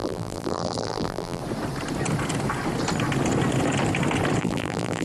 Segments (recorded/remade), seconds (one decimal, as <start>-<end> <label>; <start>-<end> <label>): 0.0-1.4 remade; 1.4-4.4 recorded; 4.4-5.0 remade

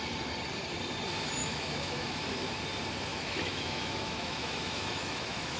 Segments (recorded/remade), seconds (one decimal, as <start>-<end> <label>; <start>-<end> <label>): 0.0-1.4 recorded; 1.4-2.5 remade; 2.5-3.1 recorded; 3.1-5.6 remade

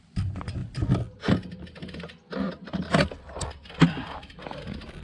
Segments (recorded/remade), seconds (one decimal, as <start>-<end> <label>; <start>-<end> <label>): 0.0-5.0 recorded